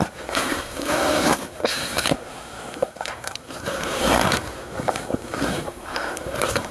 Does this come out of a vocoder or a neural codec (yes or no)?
yes